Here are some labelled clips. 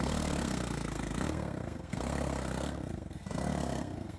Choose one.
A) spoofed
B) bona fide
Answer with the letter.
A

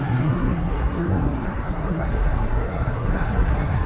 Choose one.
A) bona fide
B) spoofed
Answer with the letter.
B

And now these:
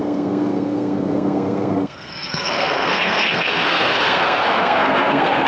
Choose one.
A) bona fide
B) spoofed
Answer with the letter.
B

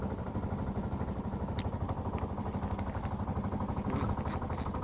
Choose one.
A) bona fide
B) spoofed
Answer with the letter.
A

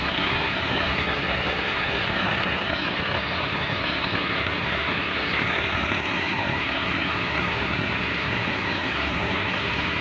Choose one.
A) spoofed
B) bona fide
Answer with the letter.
A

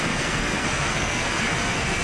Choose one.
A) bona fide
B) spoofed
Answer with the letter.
B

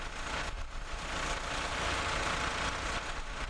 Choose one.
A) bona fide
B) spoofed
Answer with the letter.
A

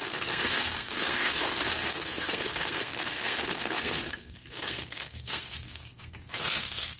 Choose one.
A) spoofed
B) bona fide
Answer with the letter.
A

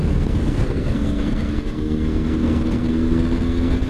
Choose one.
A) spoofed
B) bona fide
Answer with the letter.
A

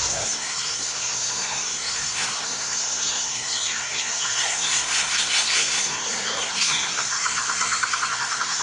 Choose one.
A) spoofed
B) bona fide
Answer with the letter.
A